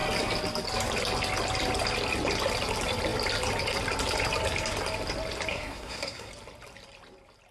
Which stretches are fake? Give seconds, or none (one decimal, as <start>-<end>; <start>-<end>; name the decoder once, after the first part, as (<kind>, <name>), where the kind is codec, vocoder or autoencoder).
5.5-6.3 (codec, SNAC)